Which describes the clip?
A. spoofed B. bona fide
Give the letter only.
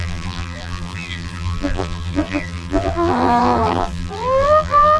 A